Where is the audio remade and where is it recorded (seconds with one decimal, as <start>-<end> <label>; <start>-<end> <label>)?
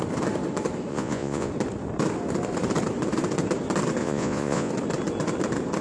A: 0.0-0.9 recorded; 0.9-1.5 remade; 1.5-4.0 recorded; 4.0-4.7 remade; 4.7-5.8 recorded